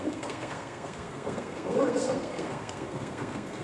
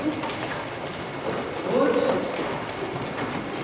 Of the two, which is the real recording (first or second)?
second